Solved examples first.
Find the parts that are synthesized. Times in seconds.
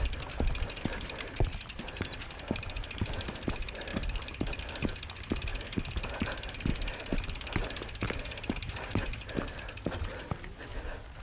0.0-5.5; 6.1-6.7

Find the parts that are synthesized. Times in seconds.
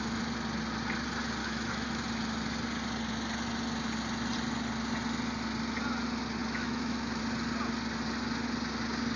1.4-2.0; 6.4-7.2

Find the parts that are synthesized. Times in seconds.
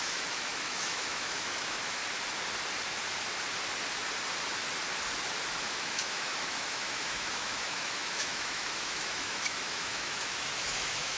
0.0-2.0; 5.6-11.2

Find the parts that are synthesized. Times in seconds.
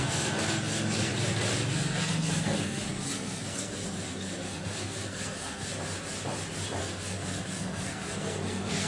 0.0-1.1; 1.7-5.7; 6.8-8.9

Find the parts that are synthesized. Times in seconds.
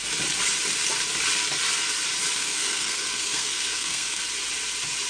2.4-4.2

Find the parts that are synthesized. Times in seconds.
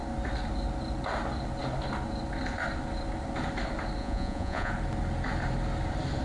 4.0-4.7